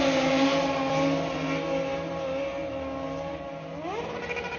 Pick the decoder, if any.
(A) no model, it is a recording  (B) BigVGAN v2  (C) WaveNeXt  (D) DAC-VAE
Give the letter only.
A